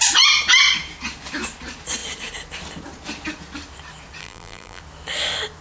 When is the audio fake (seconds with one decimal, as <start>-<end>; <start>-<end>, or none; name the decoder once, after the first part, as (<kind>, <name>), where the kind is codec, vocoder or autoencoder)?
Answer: 4.2-4.8 (vocoder, BigVGAN v2)